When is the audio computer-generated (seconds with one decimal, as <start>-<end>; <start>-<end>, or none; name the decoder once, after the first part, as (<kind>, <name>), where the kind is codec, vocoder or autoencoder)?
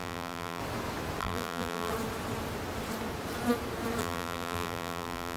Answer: 0.0-0.6 (vocoder, BigVGAN v2); 1.2-1.9; 4.0-5.4